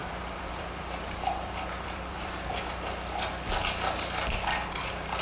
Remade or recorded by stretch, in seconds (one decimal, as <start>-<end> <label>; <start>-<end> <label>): 0.0-2.7 remade; 2.7-5.2 recorded